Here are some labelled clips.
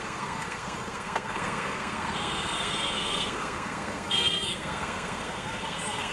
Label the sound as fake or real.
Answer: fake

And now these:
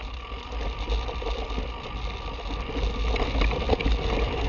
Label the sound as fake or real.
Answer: real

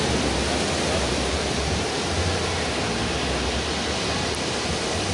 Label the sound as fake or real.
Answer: real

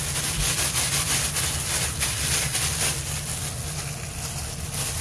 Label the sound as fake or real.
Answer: real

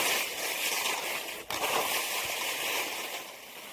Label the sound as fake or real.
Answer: real